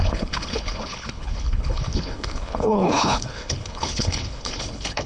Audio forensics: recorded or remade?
remade